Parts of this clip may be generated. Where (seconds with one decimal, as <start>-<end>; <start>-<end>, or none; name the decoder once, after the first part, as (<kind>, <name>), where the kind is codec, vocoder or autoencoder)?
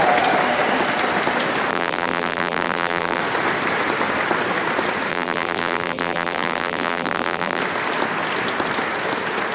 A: 1.7-3.2 (vocoder, BigVGAN v2); 5.1-7.6